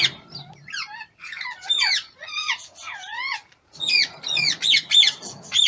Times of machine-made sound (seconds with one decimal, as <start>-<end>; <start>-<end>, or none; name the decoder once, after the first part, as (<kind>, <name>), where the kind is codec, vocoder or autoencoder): 1.2-4.6 (vocoder, Vocos)